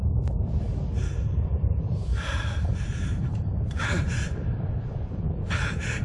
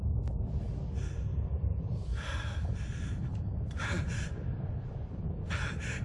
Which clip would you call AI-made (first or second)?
first